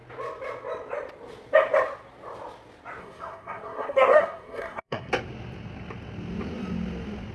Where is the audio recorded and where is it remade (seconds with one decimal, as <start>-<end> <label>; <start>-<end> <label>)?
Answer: 0.0-3.0 recorded; 3.0-5.1 remade; 5.1-7.3 recorded